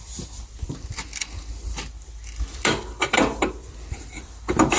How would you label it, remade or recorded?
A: remade